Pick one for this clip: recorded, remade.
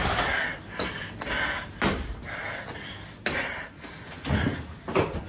recorded